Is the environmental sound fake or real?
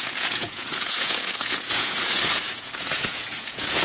fake